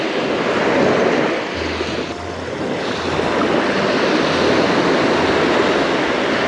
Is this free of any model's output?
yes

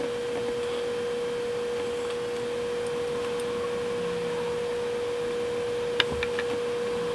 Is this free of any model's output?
yes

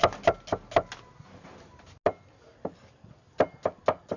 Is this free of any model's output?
yes